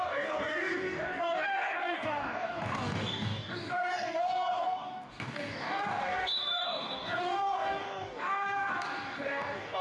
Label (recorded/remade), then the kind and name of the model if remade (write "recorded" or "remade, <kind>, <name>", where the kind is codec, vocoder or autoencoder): remade, codec, DAC